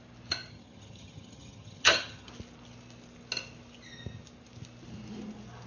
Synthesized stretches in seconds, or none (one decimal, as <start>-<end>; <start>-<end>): 0.5-2.3